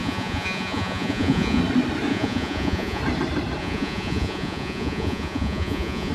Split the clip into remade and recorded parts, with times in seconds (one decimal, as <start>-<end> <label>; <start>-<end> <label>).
0.0-1.6 remade; 1.6-2.1 recorded; 2.1-3.0 remade; 3.0-3.6 recorded; 3.6-6.1 remade